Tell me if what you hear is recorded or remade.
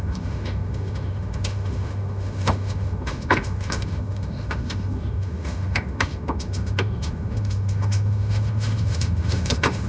remade